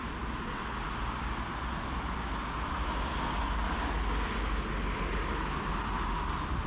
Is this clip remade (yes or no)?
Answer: no